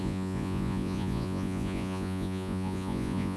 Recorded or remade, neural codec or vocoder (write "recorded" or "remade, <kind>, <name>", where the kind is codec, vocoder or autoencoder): remade, vocoder, Vocos